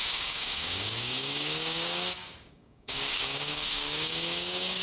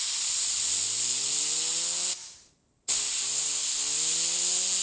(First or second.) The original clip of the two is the second